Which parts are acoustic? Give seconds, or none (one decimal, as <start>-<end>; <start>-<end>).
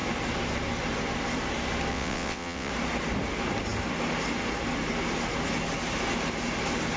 0.0-1.9; 2.7-7.0